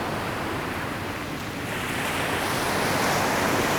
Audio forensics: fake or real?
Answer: real